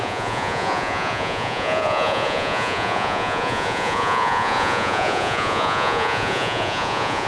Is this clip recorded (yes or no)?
no